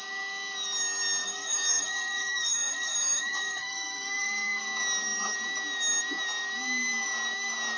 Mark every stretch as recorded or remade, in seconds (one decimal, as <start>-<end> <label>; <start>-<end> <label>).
0.0-1.2 recorded; 1.2-4.6 remade; 4.6-7.8 recorded